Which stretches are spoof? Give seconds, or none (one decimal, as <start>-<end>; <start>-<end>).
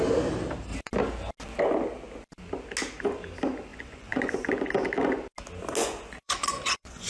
3.7-4.5; 5.8-7.1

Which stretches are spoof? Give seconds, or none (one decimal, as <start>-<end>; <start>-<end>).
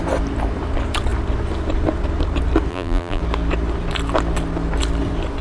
2.7-3.2